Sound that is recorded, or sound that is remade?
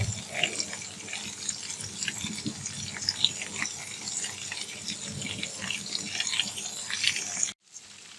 recorded